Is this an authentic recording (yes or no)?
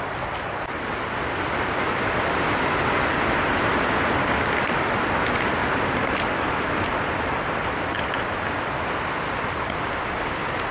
no